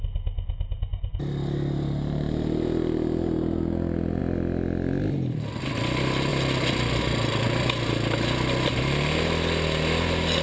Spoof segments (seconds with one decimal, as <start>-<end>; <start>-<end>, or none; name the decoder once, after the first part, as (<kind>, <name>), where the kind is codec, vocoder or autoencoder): none